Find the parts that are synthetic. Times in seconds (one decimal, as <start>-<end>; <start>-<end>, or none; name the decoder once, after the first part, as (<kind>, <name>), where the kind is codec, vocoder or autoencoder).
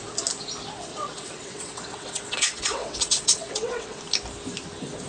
0.9-4.0 (vocoder, WaveNeXt)